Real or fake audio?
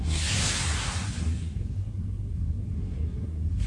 fake